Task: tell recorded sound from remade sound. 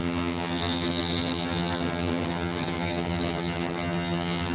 remade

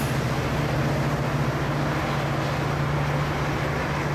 recorded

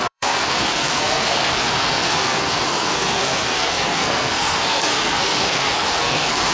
remade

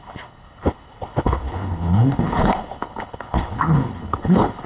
remade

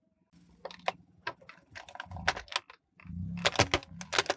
recorded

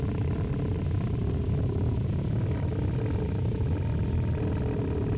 recorded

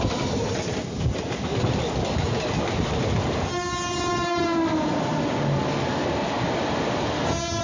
recorded